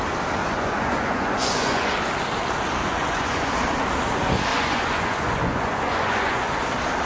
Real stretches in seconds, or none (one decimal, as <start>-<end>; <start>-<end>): 0.0-0.4; 1.9-2.8; 3.5-4.5; 6.6-7.1